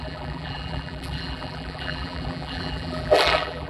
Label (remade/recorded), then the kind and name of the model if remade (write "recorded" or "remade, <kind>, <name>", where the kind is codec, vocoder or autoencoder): remade, vocoder, BigVGAN v2